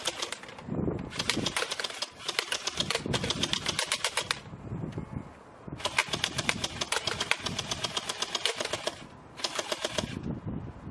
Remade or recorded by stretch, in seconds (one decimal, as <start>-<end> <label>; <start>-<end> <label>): 0.0-10.9 recorded